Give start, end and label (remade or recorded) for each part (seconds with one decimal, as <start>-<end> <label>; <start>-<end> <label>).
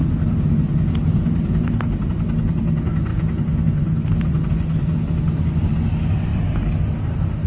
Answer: 0.0-7.5 recorded